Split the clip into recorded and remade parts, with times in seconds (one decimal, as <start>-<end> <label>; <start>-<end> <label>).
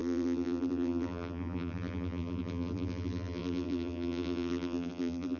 0.0-5.4 remade